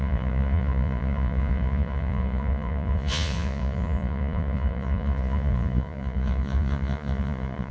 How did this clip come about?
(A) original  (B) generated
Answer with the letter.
B